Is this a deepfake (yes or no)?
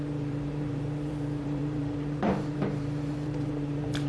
yes